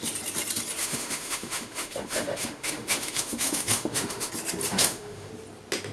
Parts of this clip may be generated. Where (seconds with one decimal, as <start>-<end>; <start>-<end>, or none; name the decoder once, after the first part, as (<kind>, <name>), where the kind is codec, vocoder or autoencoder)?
0.8-4.3 (autoencoder, DAC-VAE); 4.7-5.3